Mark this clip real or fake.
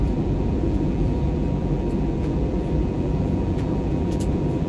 fake